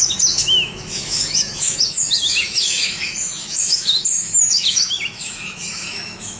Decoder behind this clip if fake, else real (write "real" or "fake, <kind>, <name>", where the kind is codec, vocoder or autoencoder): fake, autoencoder, DAC-VAE